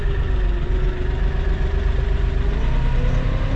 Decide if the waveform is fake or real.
real